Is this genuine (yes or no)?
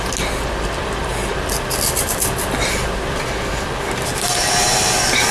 yes